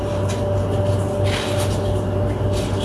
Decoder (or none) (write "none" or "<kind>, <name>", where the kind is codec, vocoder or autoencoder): none